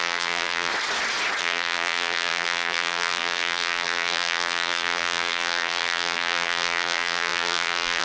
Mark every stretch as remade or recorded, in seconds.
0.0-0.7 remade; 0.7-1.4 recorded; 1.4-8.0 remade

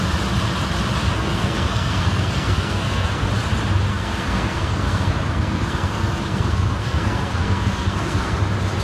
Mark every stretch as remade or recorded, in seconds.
0.0-1.0 recorded; 1.0-3.3 remade; 3.3-3.9 recorded; 3.9-8.4 remade; 8.4-8.8 recorded

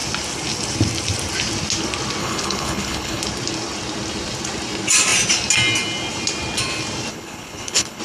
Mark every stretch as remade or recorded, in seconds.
0.0-2.2 recorded; 2.2-3.2 remade; 3.2-7.1 recorded; 7.1-8.0 remade